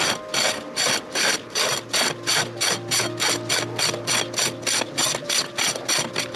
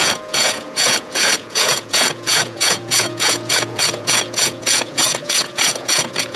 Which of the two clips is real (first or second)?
first